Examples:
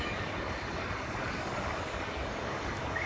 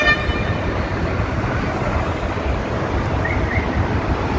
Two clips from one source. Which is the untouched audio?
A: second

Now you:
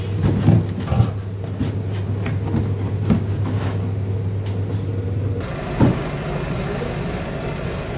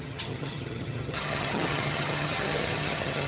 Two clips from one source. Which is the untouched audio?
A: first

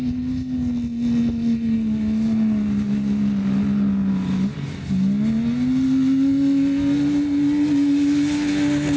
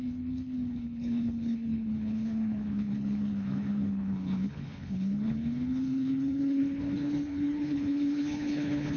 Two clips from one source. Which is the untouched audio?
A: first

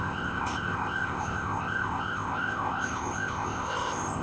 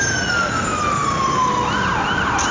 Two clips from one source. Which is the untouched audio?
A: second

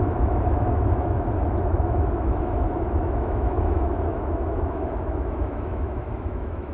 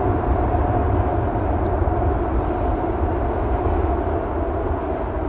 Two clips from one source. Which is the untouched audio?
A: second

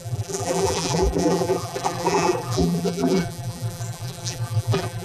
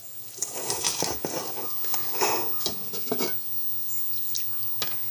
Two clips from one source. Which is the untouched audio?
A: second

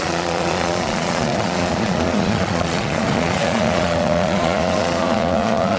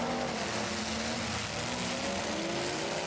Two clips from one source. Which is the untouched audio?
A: second